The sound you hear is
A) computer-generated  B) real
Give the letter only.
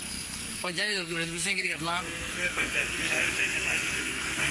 A